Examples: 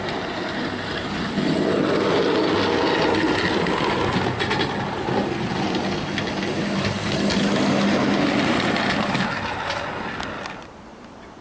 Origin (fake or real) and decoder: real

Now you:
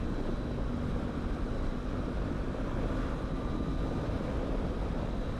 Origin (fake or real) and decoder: real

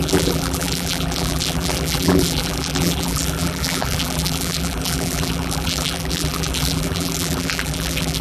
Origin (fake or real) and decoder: fake, vocoder, BigVGAN v2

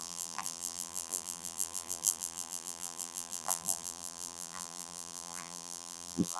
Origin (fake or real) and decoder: fake, vocoder, BigVGAN v2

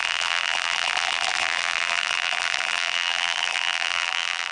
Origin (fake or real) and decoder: fake, vocoder, BigVGAN v2